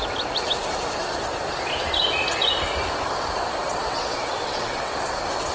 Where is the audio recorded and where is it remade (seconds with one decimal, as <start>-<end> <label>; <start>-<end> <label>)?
0.0-3.6 recorded; 3.6-4.9 remade; 4.9-5.5 recorded